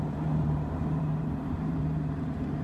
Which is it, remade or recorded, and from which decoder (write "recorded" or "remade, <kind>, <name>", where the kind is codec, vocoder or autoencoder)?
remade, vocoder, BigVGAN v2